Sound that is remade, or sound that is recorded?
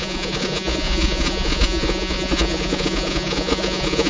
remade